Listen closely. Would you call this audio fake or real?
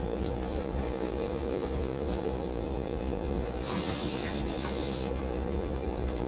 fake